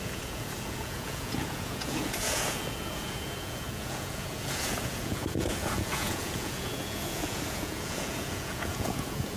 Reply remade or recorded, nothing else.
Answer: remade